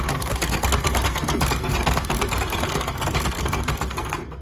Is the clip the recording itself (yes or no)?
no